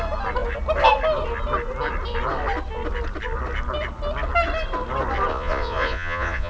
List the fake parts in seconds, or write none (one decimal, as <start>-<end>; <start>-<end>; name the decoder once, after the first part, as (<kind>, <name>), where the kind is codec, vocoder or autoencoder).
5.3-6.5 (vocoder, Vocos)